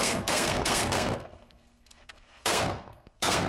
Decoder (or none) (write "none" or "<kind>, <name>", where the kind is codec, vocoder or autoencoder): codec, SNAC